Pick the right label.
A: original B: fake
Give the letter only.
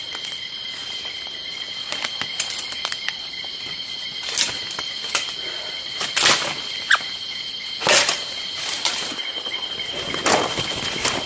A